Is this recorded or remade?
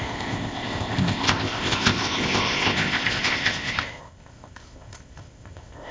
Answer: remade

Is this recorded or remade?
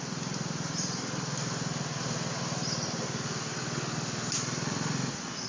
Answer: remade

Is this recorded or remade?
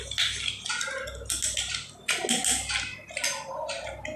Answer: recorded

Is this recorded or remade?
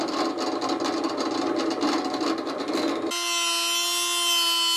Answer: recorded